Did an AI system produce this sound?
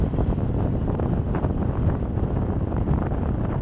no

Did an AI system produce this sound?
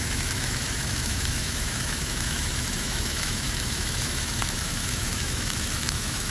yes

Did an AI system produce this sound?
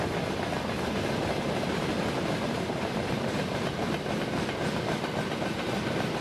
no